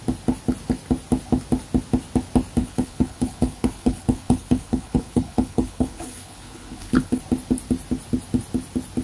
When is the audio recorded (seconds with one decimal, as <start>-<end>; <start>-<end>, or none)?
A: 0.0-2.6; 7.2-9.0